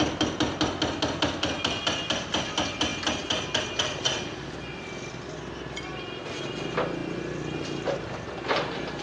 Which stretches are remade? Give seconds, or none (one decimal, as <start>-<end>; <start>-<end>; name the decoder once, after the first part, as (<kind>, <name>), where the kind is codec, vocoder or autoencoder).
none